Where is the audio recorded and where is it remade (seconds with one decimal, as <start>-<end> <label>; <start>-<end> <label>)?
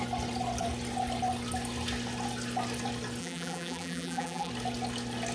0.0-3.2 recorded; 3.2-4.5 remade; 4.5-5.3 recorded